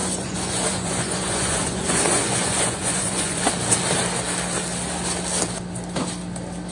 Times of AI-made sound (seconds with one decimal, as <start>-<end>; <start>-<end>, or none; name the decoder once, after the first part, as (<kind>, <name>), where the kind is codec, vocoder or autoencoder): 0.0-3.5 (vocoder, Vocos)